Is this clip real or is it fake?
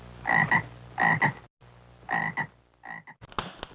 real